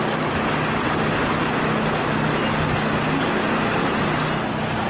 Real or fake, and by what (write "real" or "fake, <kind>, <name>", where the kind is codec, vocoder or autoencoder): real